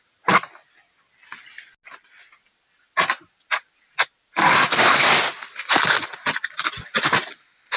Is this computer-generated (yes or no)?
no